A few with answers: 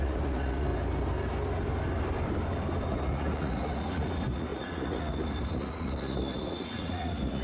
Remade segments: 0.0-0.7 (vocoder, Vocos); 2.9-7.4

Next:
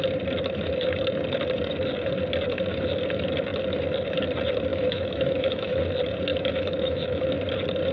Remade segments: 4.7-5.8 (autoencoder, DAC-VAE); 6.3-7.2

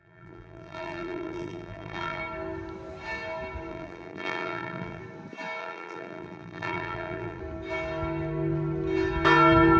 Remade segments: 0.0-2.2 (vocoder, BigVGAN v2); 3.7-5.0; 5.6-7.4

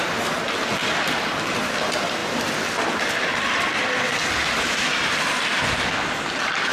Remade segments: none